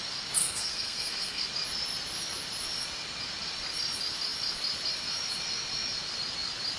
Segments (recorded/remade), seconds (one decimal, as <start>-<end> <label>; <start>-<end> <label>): 0.0-0.4 recorded; 0.4-1.5 remade; 1.5-6.8 recorded